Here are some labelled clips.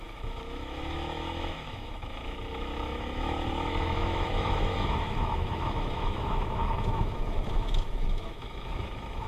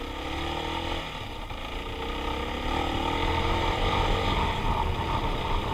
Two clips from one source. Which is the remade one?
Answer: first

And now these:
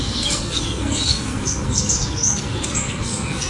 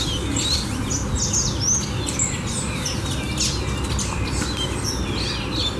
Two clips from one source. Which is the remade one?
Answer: first